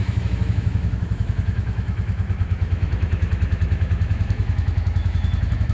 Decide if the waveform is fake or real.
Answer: fake